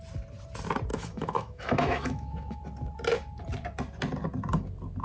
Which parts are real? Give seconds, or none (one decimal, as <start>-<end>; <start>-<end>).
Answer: 0.0-0.9; 2.6-5.0